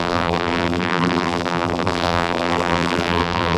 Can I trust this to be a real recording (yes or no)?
no